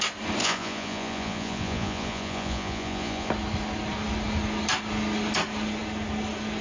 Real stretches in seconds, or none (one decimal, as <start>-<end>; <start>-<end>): 0.0-0.4; 3.3-6.6